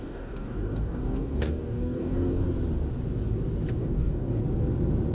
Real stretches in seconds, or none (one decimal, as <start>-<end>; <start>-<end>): 2.4-3.8; 4.4-5.1